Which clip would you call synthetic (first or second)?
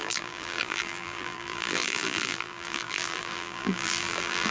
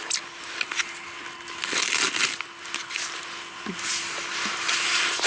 first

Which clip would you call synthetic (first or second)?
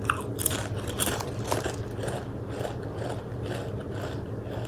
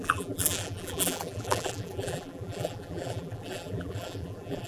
second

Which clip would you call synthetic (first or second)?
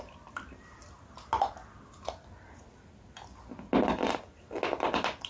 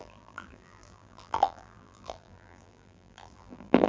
second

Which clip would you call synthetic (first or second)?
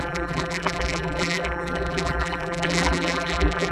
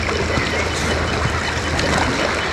first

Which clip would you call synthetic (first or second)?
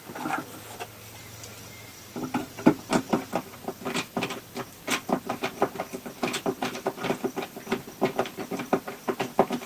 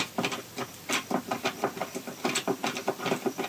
second